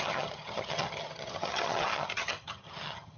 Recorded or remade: remade